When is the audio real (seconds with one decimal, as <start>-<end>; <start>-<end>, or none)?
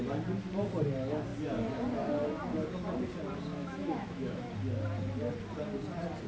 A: 0.0-3.5; 4.5-6.3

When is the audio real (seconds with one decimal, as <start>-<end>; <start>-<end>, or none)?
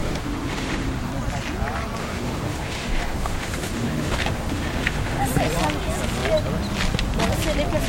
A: 1.1-2.0; 5.2-7.9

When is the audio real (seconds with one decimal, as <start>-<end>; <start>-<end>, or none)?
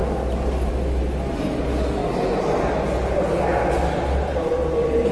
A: 0.0-0.7; 2.0-5.1